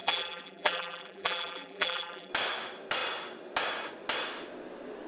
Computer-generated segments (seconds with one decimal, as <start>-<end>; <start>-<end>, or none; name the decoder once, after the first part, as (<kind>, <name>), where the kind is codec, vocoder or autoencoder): 0.0-2.3 (vocoder, BigVGAN v2)